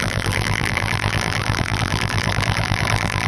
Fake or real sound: fake